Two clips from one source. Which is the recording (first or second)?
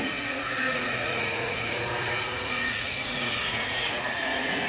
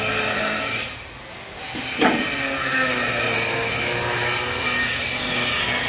second